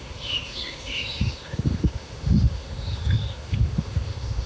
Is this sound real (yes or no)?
no